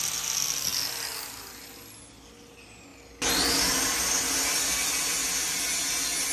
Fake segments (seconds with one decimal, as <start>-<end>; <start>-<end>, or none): none